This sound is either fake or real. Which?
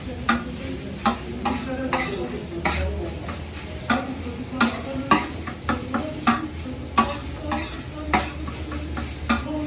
real